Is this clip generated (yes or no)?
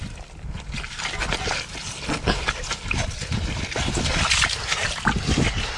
no